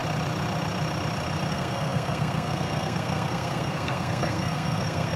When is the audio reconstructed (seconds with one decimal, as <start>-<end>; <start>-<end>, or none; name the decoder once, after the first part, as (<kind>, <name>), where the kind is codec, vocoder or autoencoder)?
1.5-5.2 (codec, SNAC)